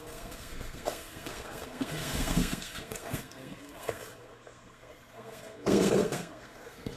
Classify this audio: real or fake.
fake